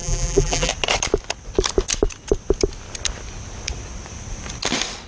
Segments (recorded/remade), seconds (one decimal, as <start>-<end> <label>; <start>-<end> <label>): 0.0-0.7 remade; 0.7-5.1 recorded

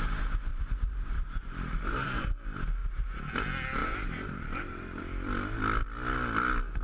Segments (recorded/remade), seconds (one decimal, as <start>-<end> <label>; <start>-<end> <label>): 0.0-0.5 recorded; 0.5-2.2 remade; 2.2-2.8 recorded; 2.8-3.3 remade; 3.3-3.8 recorded; 3.8-5.0 remade; 5.0-6.8 recorded

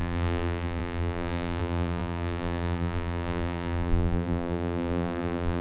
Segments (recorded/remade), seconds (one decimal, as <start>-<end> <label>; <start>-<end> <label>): 0.0-5.6 remade

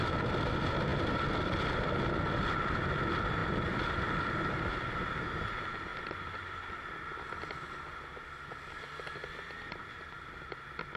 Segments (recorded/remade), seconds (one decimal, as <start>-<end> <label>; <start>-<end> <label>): 0.0-3.4 recorded; 3.4-4.2 remade; 4.2-5.9 recorded; 5.9-6.7 remade; 6.7-11.0 recorded

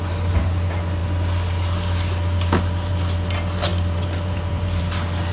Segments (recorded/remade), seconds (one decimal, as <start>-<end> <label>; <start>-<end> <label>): 0.0-3.7 recorded; 3.7-4.8 remade; 4.8-5.3 recorded

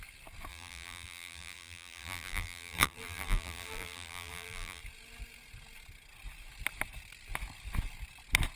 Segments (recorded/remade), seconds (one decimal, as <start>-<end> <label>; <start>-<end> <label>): 0.0-0.5 recorded; 0.5-4.8 remade; 4.8-8.6 recorded